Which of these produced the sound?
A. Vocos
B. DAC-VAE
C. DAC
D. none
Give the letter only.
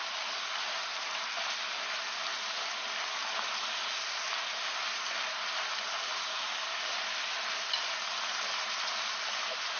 D